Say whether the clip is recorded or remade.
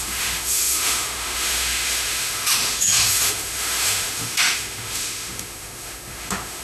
remade